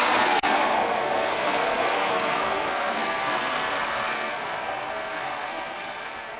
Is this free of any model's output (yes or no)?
no